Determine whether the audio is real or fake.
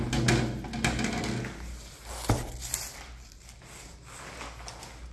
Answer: real